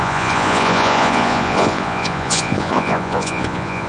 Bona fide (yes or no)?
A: no